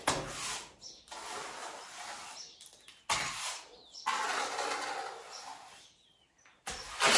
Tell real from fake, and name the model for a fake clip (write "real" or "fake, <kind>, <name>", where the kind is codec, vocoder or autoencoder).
real